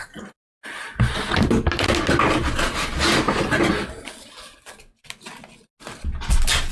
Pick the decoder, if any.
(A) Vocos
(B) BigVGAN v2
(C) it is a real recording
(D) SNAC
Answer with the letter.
C